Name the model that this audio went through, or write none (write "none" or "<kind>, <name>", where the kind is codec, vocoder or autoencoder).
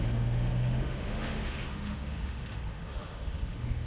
autoencoder, DAC-VAE